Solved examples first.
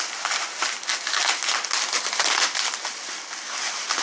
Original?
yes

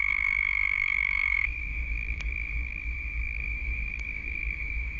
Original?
no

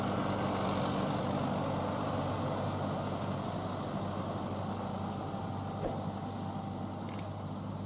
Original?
yes